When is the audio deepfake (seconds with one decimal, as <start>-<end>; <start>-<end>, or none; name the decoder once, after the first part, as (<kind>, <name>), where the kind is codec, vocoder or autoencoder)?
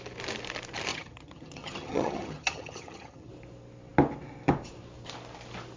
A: 0.9-3.3 (vocoder, HiFi-GAN)